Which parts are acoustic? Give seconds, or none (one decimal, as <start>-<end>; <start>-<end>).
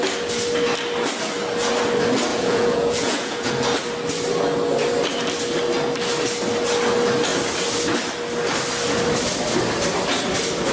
0.0-2.3; 3.5-10.7